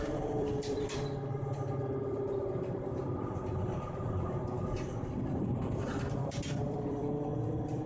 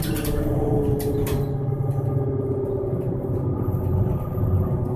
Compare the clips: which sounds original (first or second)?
second